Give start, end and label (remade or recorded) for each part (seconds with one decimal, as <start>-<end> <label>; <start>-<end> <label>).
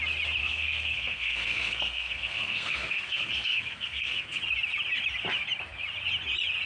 0.0-0.4 recorded; 0.4-4.4 remade; 4.4-6.7 recorded